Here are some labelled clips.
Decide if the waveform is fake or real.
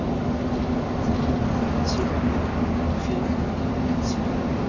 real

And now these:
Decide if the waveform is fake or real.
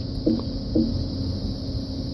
real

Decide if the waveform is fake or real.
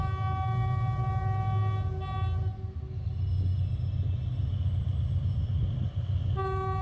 real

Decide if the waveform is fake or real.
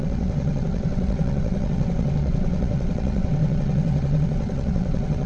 fake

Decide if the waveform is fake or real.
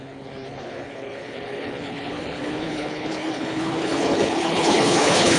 fake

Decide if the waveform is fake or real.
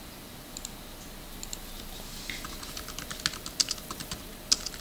real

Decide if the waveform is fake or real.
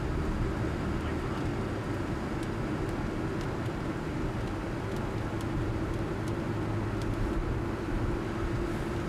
real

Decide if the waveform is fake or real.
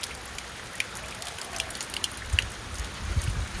real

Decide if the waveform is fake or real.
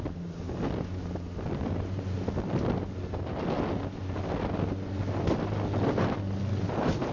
real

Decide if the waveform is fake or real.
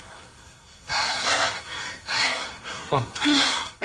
fake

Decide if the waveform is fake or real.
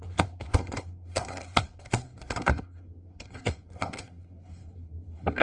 fake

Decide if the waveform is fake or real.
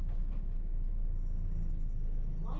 real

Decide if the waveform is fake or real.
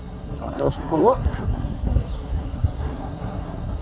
fake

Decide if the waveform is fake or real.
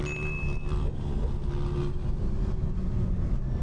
real